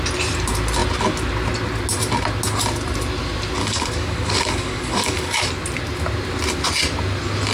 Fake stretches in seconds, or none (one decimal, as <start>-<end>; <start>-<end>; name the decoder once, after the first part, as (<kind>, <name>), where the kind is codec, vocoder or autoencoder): 3.6-5.5 (codec, DAC)